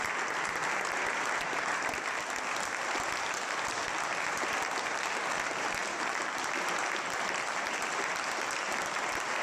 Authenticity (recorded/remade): recorded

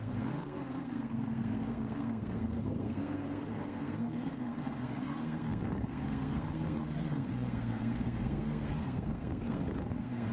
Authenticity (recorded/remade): remade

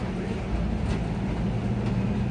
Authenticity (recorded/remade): recorded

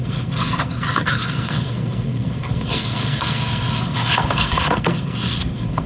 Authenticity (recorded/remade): remade